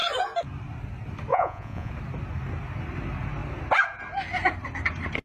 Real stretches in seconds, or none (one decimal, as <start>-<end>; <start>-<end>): 0.0-1.3; 1.9-5.2